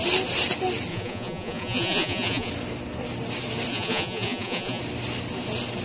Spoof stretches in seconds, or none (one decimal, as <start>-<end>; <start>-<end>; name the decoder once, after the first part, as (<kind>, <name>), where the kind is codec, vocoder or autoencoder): 0.9-2.5 (vocoder, Vocos); 3.7-4.8